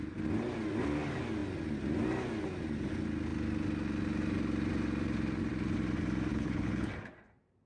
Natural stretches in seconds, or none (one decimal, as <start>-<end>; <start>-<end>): 0.0-6.3; 6.9-7.7